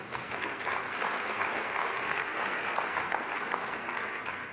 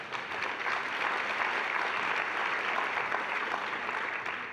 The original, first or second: second